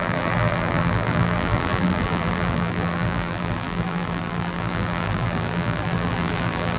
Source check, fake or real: fake